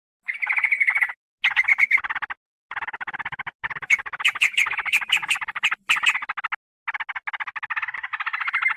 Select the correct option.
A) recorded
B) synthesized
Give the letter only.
A